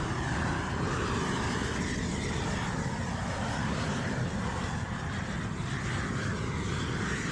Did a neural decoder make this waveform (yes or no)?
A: no